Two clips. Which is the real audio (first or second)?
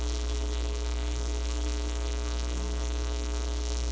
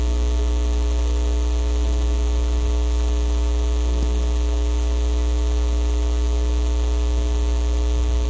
second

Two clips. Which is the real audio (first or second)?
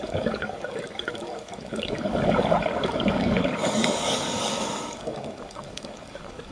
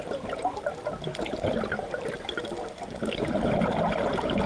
second